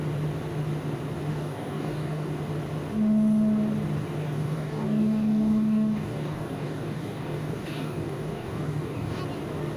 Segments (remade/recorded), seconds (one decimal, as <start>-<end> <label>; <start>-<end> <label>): 0.0-1.3 recorded; 1.3-2.3 remade; 2.3-4.2 recorded; 4.2-9.2 remade; 9.2-9.8 recorded